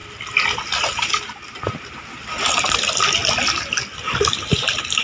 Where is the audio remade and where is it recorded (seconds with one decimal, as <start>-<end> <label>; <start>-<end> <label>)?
0.0-5.0 recorded